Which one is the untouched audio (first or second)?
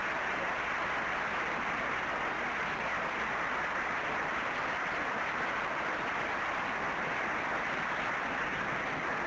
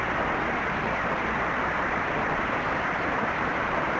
first